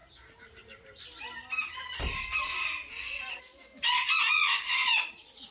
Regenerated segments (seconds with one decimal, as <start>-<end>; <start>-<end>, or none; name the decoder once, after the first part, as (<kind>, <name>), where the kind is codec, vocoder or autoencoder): 3.3-3.7 (vocoder, Vocos); 4.3-5.5